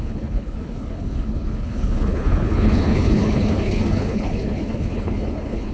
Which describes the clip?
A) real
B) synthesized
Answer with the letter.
B